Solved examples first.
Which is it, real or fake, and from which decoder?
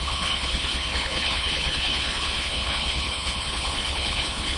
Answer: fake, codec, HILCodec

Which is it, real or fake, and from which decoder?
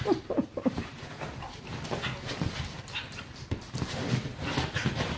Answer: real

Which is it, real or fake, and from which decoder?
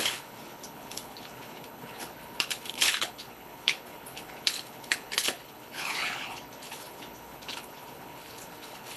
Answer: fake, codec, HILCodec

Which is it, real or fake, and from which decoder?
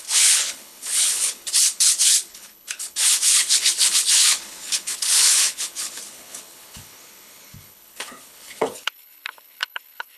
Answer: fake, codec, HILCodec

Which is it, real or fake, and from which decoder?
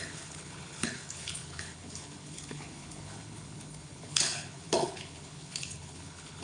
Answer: fake, codec, HILCodec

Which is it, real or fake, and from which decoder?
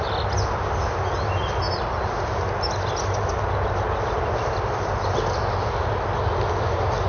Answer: real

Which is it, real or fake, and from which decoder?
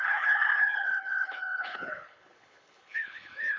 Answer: fake, codec, HILCodec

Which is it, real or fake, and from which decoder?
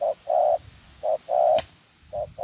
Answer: real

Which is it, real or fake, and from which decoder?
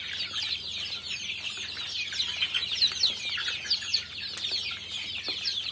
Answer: real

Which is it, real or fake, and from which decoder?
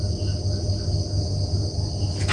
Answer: real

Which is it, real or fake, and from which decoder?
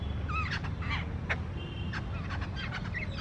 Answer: real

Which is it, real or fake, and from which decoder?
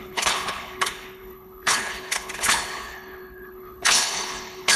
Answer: fake, codec, HILCodec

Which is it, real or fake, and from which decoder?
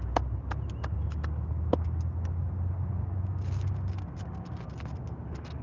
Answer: real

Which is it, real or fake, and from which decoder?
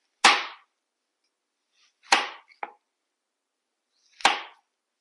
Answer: real